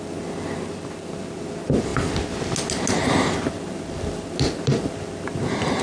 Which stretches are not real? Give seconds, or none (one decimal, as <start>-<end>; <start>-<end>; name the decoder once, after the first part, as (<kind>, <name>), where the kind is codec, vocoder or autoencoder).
none